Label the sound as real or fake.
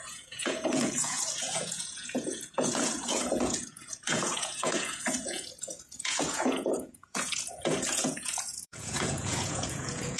fake